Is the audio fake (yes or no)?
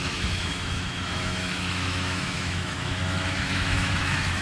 yes